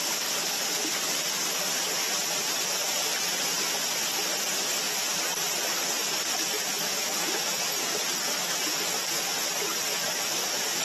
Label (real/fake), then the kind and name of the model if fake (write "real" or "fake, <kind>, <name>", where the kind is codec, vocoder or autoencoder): real